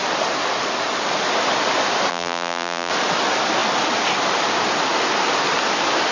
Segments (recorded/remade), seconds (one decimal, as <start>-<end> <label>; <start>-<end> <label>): 0.0-2.1 recorded; 2.1-2.9 remade; 2.9-6.1 recorded